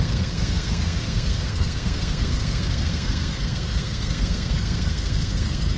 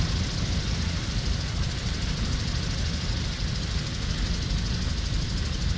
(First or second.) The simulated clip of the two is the first